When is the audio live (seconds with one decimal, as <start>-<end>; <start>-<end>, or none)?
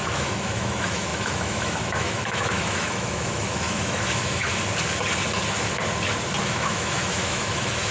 4.5-6.4